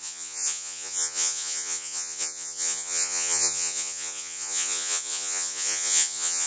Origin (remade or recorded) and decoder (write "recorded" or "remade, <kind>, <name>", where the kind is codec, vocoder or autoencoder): remade, vocoder, Vocos